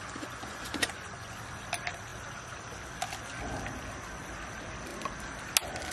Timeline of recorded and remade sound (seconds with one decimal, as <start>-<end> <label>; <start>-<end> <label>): 0.0-1.4 remade; 1.4-5.9 recorded

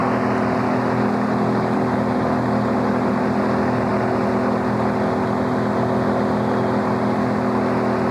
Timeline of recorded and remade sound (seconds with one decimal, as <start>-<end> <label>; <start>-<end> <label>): 0.0-8.1 recorded

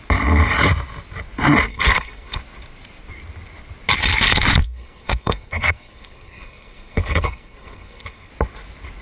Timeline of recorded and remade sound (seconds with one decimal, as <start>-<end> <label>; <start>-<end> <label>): 0.0-1.7 recorded; 1.7-2.4 remade; 2.4-4.6 recorded; 4.6-8.3 remade; 8.3-9.0 recorded

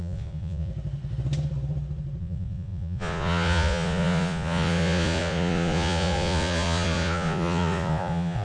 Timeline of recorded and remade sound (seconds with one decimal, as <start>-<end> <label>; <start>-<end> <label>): 0.0-0.7 remade; 0.7-2.2 recorded; 2.2-8.4 remade